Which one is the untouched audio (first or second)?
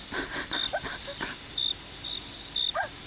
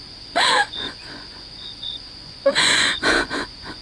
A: first